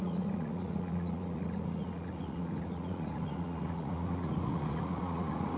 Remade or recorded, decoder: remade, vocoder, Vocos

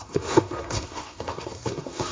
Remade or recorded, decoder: remade, codec, SNAC